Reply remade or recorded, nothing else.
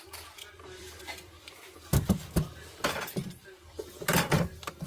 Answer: remade